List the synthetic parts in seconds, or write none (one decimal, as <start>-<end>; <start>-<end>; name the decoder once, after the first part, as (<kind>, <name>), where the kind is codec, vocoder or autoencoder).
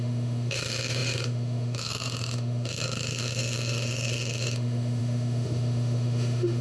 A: 0.0-6.6 (autoencoder, DAC-VAE)